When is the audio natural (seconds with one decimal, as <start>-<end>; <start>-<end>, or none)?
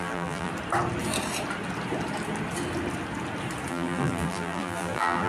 0.5-3.7